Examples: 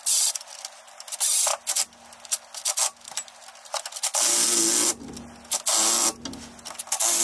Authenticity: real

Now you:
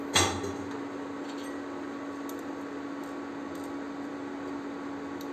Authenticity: real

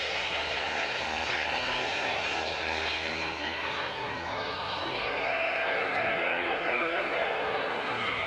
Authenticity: fake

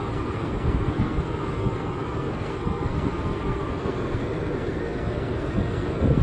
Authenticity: fake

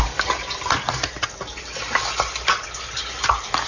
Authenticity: real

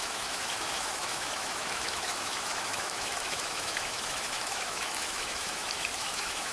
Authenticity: fake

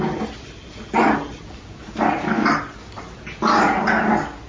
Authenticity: real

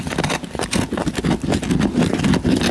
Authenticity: real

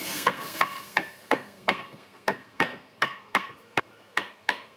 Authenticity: fake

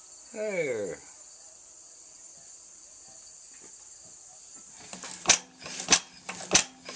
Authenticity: real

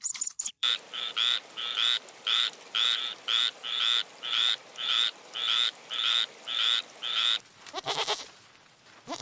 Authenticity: fake